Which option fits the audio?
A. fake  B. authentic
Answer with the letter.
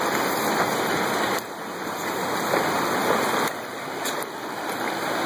B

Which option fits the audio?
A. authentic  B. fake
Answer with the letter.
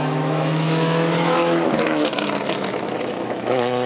B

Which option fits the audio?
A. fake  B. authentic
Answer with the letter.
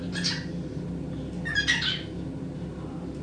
B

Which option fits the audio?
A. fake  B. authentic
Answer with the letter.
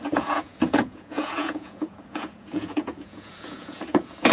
A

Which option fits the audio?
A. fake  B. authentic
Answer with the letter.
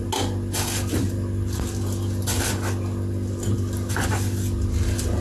B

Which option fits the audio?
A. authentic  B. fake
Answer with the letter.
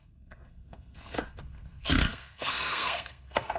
B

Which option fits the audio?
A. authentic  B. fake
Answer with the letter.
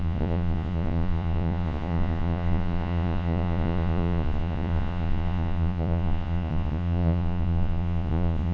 B